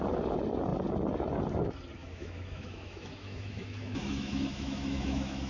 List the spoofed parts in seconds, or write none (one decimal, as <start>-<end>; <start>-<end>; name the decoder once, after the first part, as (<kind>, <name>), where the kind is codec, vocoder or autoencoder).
2.0-5.5 (autoencoder, DAC-VAE)